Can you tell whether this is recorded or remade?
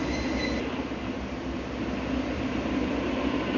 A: recorded